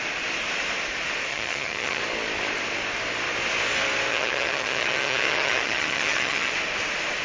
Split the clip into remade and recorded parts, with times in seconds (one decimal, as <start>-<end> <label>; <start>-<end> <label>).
0.0-1.3 recorded; 1.3-2.0 remade; 2.0-4.1 recorded; 4.1-6.5 remade; 6.5-7.2 recorded